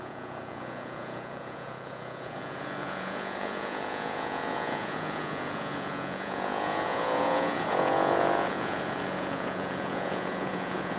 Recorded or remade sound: remade